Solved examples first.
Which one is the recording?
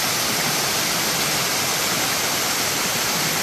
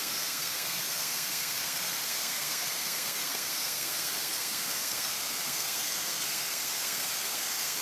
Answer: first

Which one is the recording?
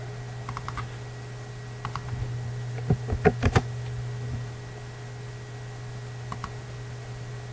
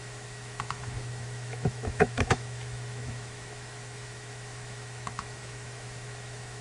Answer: first